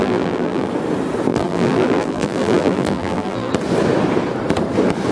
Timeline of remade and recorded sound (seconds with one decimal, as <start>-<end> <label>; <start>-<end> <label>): 0.0-0.7 remade; 0.7-1.3 recorded; 1.3-3.5 remade; 3.5-5.1 recorded